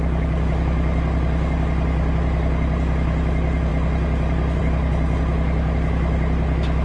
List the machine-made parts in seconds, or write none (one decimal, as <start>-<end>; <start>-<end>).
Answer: none